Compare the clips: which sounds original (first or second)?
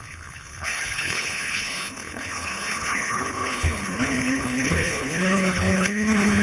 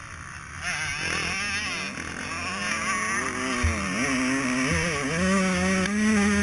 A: second